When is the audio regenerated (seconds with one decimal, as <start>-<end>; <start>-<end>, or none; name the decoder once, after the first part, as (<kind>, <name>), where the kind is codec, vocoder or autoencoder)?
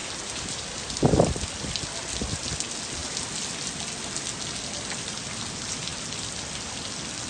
none